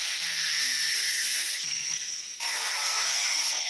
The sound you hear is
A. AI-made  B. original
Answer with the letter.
A